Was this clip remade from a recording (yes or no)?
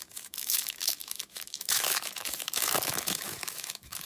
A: yes